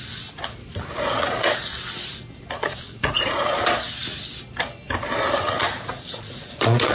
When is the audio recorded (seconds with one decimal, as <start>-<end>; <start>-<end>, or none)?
0.6-1.2; 1.7-2.4; 3.5-5.4